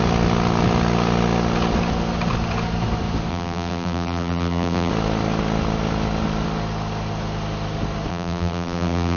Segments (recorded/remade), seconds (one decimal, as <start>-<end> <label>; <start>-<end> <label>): 0.0-3.3 recorded; 3.3-4.9 remade; 4.9-8.1 recorded; 8.1-9.2 remade